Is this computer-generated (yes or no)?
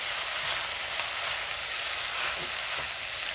no